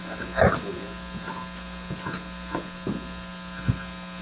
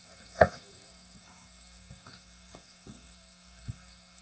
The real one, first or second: first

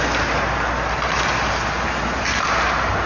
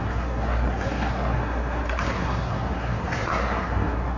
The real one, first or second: first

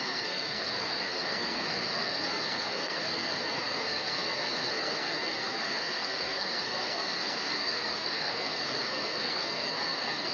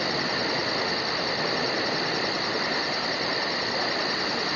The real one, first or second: second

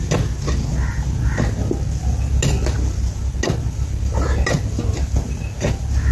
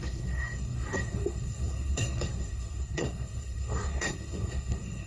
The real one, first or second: first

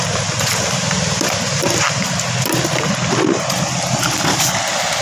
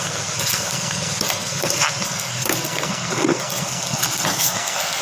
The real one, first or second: first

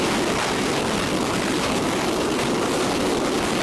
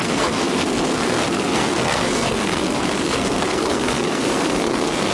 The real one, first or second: first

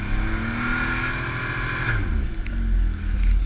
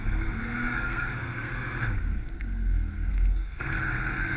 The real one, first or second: first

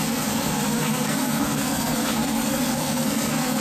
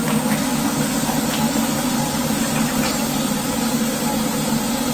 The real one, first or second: second